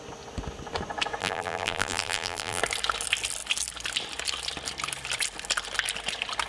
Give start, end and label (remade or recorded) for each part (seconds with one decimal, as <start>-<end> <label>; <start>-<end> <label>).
0.0-1.2 recorded; 1.2-2.6 remade; 2.6-6.5 recorded